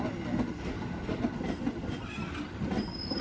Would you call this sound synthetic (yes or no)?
no